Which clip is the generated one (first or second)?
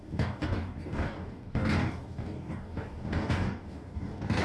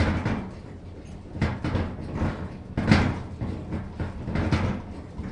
first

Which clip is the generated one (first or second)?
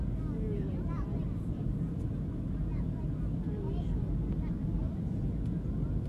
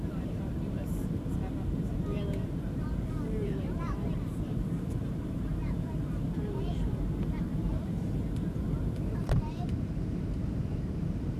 second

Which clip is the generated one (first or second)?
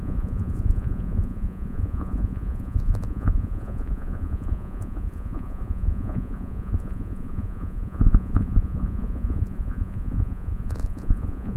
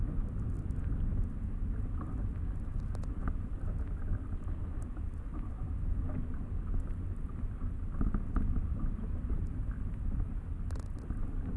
first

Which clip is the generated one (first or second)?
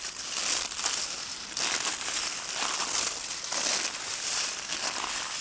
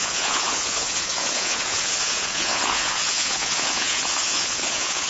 second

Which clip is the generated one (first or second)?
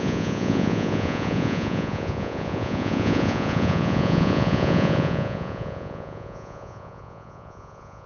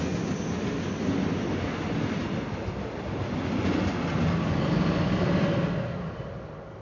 first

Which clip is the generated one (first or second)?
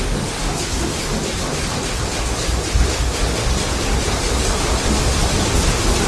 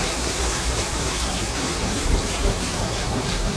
second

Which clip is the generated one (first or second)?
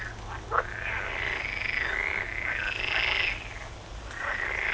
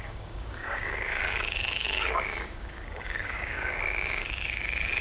second